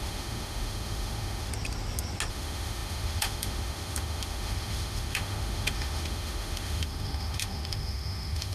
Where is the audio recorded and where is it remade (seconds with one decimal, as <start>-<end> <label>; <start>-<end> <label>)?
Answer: 0.0-1.5 remade; 1.5-2.3 recorded; 2.3-8.5 remade